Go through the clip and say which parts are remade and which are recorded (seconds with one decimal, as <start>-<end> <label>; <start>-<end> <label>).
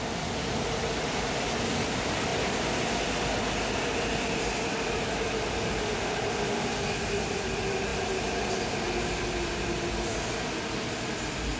0.0-11.6 recorded